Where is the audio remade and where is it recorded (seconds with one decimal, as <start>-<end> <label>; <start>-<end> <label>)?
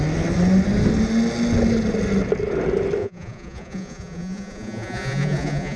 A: 0.0-3.0 recorded; 3.0-5.8 remade